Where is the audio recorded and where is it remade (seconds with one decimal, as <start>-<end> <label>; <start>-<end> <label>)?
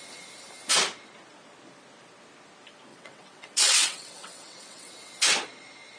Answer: 0.0-2.9 recorded; 2.9-4.9 remade; 4.9-6.0 recorded